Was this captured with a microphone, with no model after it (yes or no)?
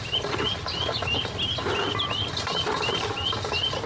yes